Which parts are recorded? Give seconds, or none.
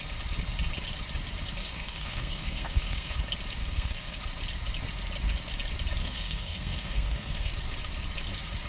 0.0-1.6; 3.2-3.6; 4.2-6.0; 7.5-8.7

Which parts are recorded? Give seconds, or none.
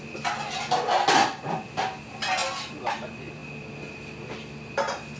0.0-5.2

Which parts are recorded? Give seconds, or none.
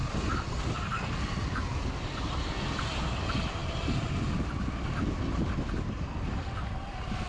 0.0-7.3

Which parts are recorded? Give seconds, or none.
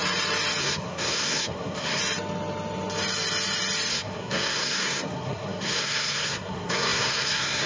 0.0-0.6; 2.0-3.9